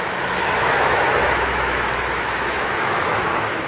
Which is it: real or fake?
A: fake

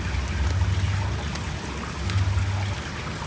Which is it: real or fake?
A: real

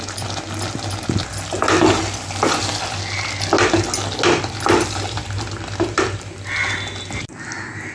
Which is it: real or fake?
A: real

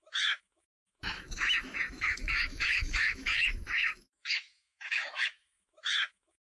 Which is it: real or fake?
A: fake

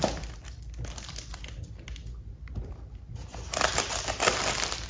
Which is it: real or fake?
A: real